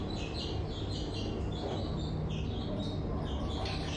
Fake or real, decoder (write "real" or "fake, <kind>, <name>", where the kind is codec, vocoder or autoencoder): real